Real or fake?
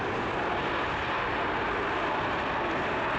real